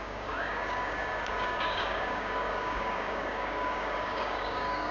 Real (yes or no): no